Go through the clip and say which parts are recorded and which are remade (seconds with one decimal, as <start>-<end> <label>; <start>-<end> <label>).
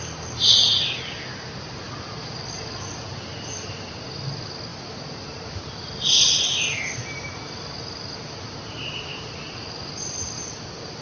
0.0-11.0 recorded